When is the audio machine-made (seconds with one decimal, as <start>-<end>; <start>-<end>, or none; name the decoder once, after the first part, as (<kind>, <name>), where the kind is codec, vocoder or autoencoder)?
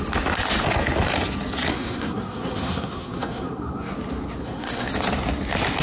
1.7-3.9 (codec, SNAC); 4.4-4.9